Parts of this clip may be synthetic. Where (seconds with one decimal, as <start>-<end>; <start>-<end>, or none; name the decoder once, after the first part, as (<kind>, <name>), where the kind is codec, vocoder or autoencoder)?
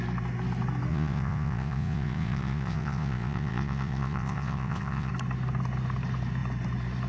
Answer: 0.9-5.1 (vocoder, Vocos)